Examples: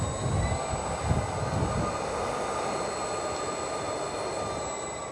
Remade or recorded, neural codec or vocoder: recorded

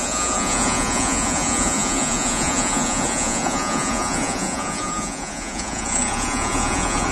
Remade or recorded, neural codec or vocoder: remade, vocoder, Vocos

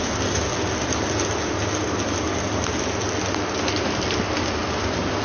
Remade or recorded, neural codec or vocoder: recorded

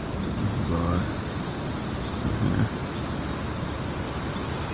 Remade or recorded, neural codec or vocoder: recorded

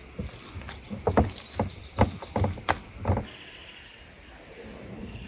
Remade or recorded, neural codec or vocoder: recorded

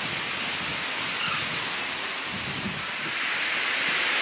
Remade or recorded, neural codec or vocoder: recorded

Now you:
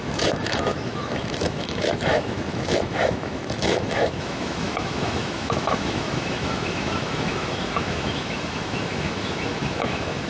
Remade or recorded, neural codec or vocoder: remade, autoencoder, DAC-VAE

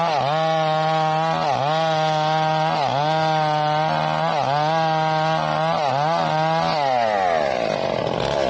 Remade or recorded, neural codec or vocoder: recorded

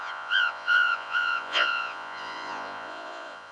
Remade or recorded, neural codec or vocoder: remade, vocoder, Vocos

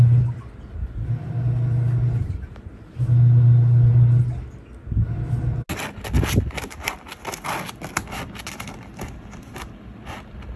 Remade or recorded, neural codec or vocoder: recorded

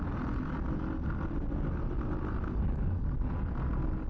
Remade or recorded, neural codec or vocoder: recorded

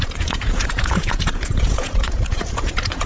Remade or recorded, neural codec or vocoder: remade, vocoder, Vocos